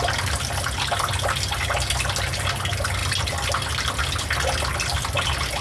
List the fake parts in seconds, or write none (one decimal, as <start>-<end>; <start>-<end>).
none